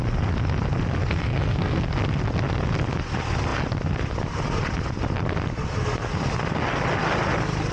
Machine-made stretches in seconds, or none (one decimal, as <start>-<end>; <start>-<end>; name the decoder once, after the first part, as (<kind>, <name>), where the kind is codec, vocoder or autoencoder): 1.0-1.8 (codec, SNAC)